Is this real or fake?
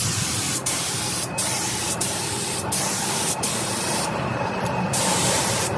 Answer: fake